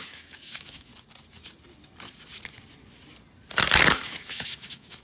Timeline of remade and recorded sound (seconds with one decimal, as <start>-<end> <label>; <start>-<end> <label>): 0.0-0.9 remade; 0.9-3.9 recorded; 3.9-5.0 remade